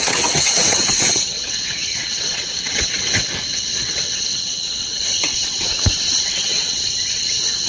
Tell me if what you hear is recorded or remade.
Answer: remade